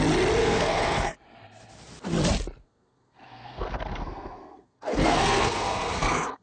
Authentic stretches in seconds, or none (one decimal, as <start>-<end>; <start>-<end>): 0.0-0.4; 1.1-2.6